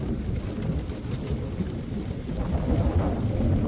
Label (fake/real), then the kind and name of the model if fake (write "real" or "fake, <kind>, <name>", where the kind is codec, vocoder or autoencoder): real